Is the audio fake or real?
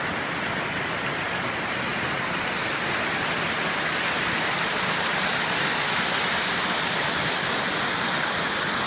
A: real